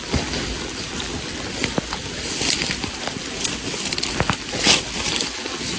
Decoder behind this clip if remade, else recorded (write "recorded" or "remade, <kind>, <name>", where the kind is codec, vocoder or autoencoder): recorded